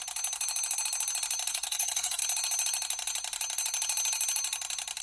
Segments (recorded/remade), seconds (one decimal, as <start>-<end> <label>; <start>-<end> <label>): 0.0-1.5 recorded; 1.5-2.2 remade; 2.2-5.0 recorded